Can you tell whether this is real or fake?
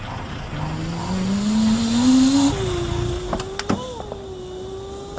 real